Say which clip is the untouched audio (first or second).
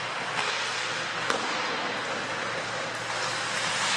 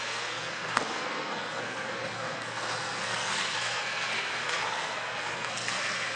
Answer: first